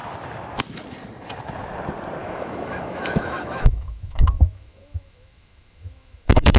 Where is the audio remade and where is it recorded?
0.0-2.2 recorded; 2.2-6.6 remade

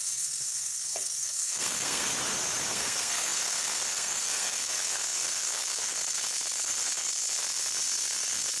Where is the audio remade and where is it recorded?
0.0-2.1 remade; 2.1-2.7 recorded; 2.7-8.6 remade

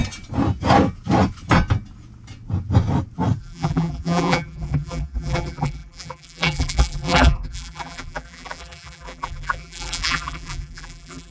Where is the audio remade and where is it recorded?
0.0-3.4 recorded; 3.4-11.3 remade

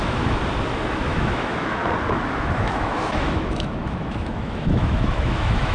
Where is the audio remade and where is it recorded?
0.0-0.4 remade; 0.4-1.0 recorded; 1.0-1.8 remade; 1.8-2.3 recorded; 2.3-5.7 remade

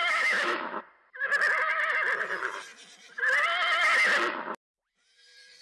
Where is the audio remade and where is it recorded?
0.0-0.8 remade; 0.8-5.6 recorded